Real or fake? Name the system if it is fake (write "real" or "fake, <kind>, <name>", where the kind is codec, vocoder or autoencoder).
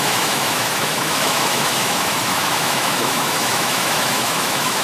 fake, autoencoder, DAC-VAE